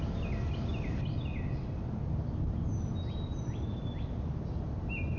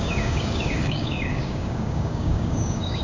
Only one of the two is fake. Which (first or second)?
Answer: second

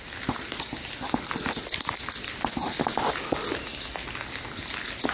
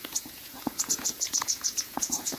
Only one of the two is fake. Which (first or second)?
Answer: second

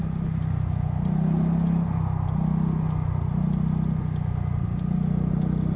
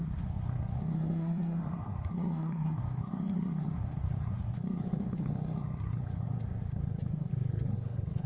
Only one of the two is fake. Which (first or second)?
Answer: second